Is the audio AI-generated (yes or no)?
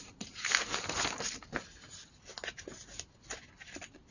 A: no